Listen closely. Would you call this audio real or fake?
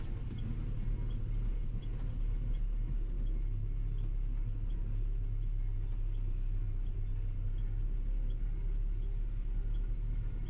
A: real